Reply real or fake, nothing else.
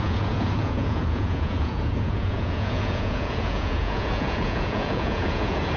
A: fake